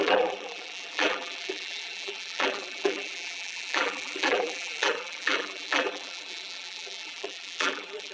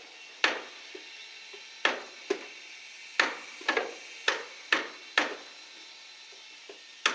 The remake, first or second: first